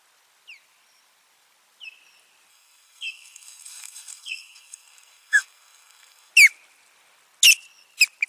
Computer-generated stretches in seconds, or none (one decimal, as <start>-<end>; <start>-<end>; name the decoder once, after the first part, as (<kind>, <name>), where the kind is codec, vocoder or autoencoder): 2.5-6.3 (codec, SNAC)